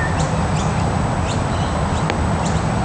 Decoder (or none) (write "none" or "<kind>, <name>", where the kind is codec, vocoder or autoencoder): none